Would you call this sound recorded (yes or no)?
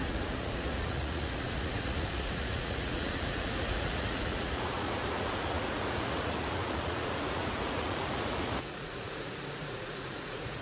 no